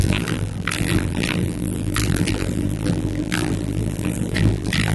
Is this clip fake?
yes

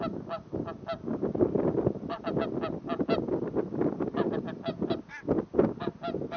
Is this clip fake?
no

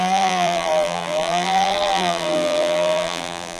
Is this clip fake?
yes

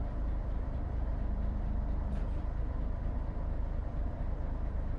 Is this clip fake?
yes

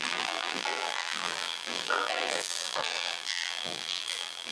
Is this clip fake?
yes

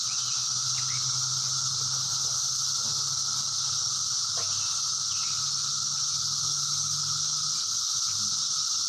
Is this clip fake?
no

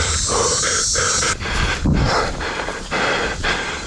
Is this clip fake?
yes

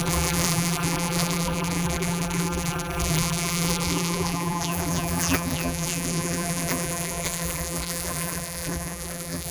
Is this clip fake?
yes